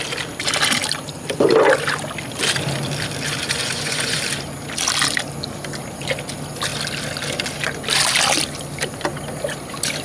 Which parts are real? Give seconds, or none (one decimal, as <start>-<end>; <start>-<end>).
0.0-3.6; 4.2-10.0